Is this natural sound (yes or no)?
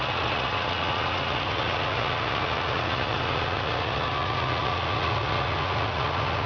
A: no